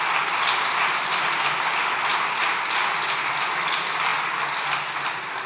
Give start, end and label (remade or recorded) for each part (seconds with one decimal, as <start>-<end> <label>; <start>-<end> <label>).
0.0-5.5 recorded